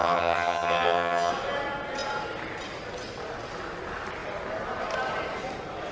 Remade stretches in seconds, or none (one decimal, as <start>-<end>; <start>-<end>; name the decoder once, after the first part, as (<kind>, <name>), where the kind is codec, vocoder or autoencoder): 0.0-1.3 (vocoder, HiFi-GAN)

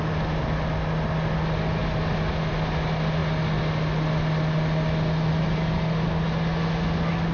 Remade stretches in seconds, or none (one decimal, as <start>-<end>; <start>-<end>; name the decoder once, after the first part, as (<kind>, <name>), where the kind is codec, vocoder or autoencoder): none

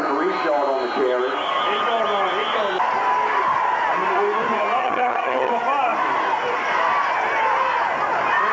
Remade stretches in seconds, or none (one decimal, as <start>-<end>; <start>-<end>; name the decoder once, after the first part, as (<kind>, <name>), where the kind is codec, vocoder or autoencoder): 4.8-5.5 (vocoder, HiFi-GAN)

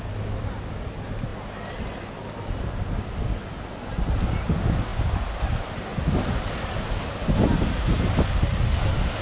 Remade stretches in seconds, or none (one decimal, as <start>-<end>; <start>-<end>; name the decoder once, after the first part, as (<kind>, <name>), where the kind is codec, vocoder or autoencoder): none

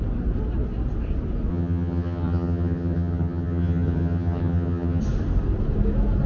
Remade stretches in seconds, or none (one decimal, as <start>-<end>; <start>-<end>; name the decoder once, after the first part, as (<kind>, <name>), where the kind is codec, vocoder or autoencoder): 1.5-5.0 (vocoder, HiFi-GAN)

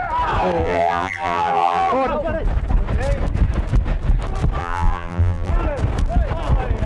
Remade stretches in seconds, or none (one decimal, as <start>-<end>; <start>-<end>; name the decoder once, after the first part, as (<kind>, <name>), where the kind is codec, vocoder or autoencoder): 0.6-1.9 (vocoder, BigVGAN v2); 4.6-5.5

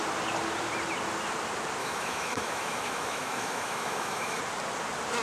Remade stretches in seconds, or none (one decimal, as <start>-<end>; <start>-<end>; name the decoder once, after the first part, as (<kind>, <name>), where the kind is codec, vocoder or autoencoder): 1.8-4.4 (autoencoder, DAC-VAE)